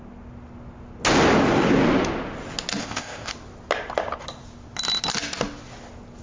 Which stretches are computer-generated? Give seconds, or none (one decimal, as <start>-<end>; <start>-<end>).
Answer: 2.8-3.3